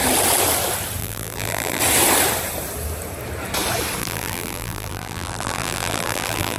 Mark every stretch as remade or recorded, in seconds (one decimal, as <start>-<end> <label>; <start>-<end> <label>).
0.0-1.0 recorded; 1.0-1.8 remade; 1.8-4.0 recorded; 4.0-6.6 remade